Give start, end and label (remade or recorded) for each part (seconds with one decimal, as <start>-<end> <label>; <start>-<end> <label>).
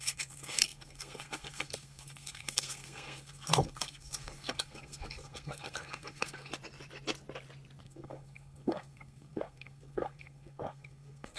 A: 0.0-6.5 remade; 6.5-7.8 recorded; 7.8-11.4 remade